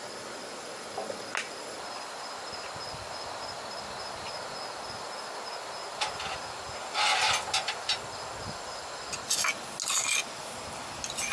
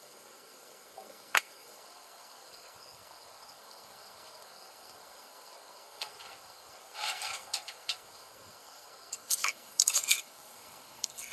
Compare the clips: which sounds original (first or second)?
first